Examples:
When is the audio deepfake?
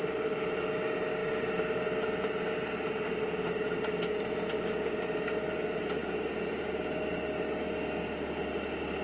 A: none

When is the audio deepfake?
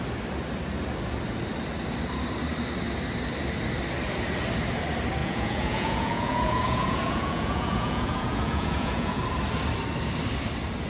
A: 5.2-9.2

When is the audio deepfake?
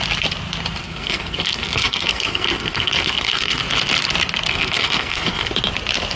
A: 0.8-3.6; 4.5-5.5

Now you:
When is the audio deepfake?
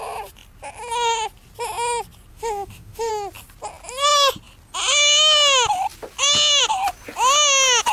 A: 2.3-3.1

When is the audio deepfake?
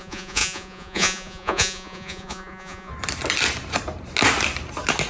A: 0.0-2.9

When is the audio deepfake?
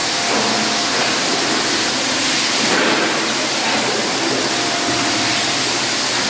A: none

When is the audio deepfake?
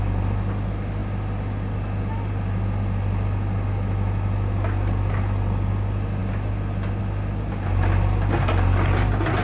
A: none